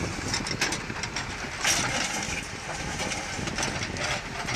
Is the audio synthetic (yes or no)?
no